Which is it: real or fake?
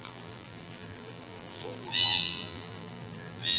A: fake